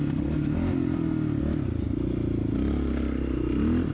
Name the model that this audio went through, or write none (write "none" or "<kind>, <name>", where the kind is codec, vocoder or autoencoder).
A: none